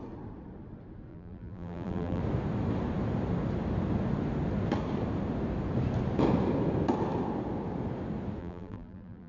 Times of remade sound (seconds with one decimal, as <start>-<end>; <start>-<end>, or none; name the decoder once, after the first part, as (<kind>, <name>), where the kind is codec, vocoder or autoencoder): 1.1-2.2 (vocoder, BigVGAN v2); 8.4-9.3